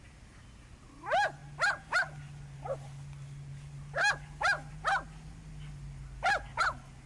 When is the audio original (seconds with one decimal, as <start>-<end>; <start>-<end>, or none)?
0.0-7.1